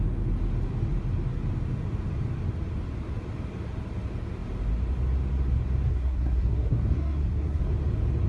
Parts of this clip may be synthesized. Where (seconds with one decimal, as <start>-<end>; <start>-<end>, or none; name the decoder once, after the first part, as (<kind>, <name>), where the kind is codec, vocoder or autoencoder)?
5.9-7.6 (codec, SNAC)